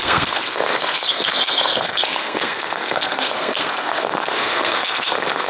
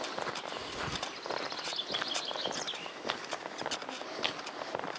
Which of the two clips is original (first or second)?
second